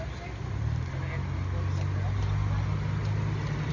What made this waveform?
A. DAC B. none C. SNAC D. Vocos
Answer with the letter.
B